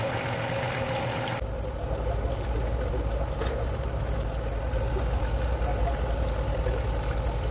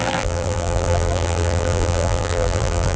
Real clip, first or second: first